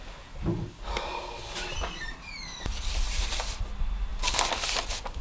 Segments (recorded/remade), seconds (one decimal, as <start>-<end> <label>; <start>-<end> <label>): 0.0-0.5 recorded; 0.5-3.6 remade; 3.6-5.2 recorded